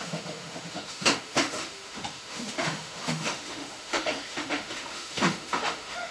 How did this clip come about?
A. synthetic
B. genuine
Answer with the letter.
A